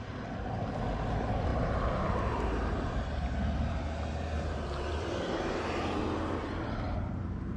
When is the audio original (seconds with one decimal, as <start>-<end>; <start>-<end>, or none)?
0.0-7.6